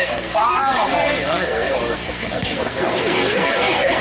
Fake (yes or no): yes